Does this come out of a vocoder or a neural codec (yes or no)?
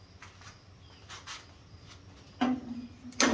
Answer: no